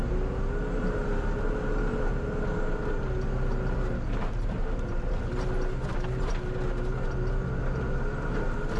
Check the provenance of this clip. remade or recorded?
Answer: recorded